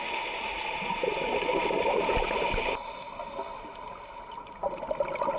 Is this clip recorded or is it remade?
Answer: recorded